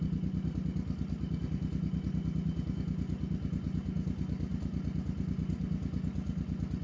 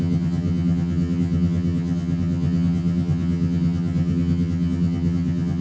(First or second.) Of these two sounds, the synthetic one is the second